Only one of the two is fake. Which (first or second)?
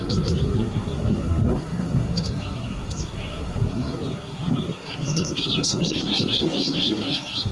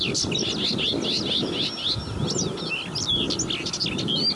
first